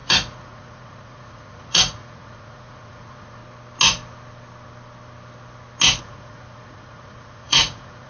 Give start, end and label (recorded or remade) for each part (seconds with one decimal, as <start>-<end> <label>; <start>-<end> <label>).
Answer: 0.0-3.4 remade; 3.4-6.0 recorded; 6.0-8.1 remade